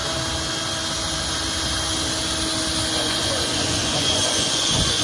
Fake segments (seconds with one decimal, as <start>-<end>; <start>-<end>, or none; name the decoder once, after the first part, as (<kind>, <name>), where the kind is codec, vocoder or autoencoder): 3.0-5.0 (vocoder, Vocos)